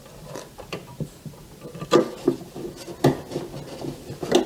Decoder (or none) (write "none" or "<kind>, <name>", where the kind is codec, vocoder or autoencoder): none